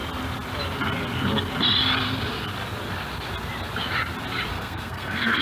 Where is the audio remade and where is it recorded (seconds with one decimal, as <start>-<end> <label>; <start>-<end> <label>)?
0.0-4.5 recorded; 4.5-5.4 remade